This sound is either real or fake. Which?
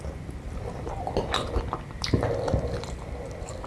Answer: real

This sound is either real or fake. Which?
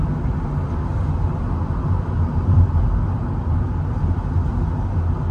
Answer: real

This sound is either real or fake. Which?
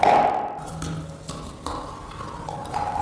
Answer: real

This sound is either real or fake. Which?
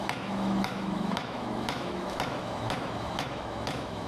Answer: fake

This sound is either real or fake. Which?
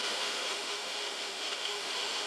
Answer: fake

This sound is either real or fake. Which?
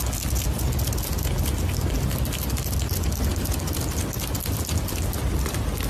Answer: real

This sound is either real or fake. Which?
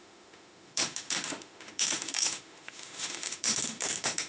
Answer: fake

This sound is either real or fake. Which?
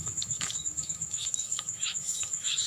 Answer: fake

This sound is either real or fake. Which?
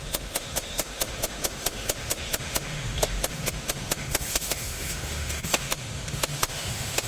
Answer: fake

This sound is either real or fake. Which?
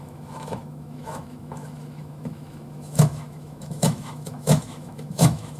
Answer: fake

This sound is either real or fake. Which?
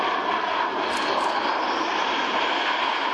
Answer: real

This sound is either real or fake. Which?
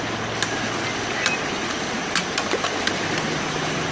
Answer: real